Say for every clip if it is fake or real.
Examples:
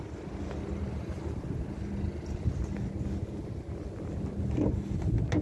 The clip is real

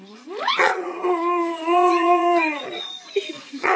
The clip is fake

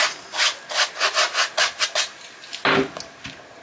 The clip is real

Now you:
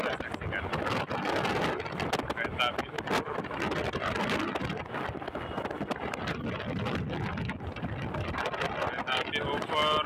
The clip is real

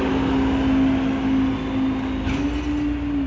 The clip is real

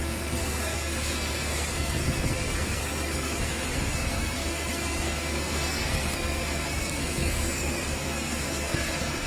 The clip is fake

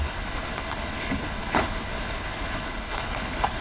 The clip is fake